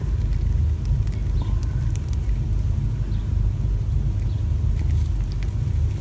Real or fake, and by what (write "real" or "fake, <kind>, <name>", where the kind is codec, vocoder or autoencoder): real